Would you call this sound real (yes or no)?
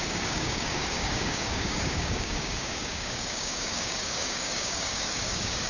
no